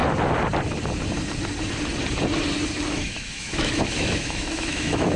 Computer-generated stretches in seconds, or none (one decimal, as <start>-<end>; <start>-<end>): 2.9-5.2